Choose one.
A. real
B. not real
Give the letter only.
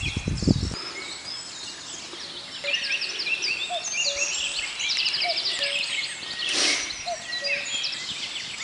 A